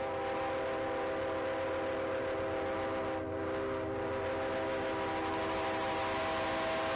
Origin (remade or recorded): recorded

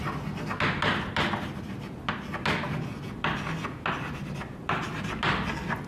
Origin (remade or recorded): recorded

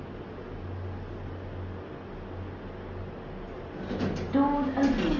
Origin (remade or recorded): recorded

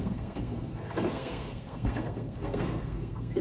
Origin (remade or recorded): remade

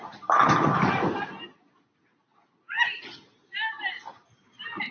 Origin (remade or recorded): recorded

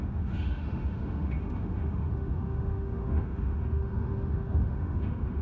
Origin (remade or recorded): remade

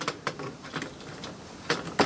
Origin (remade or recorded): recorded